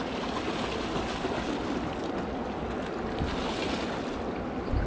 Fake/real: real